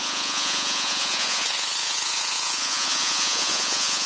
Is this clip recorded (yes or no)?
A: no